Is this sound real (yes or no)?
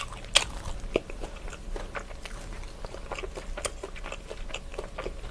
yes